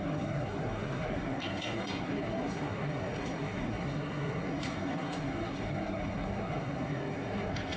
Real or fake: fake